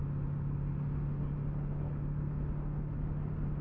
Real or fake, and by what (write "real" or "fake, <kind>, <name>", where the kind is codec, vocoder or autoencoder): real